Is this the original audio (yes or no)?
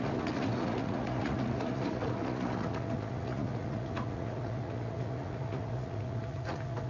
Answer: no